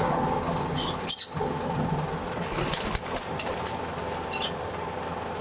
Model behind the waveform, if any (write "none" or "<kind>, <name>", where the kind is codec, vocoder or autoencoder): none